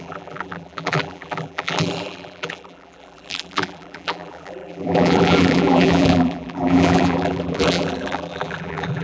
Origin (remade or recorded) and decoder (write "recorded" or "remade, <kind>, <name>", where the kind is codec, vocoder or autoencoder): remade, vocoder, BigVGAN v2